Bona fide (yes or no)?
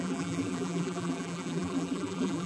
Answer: no